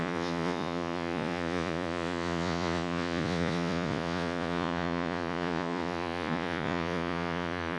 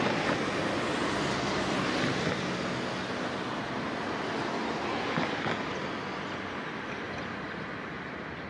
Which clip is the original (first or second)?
second